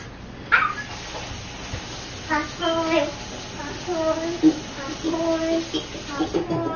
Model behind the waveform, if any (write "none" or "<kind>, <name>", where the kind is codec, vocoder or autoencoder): none